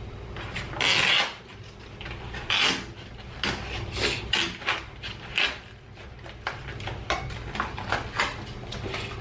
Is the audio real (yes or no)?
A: yes